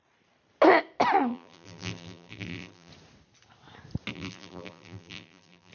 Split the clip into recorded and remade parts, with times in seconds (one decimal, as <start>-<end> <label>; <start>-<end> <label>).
0.0-1.3 recorded; 1.3-2.9 remade; 2.9-4.1 recorded; 4.1-5.7 remade